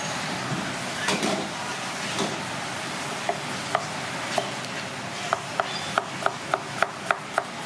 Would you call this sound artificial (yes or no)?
yes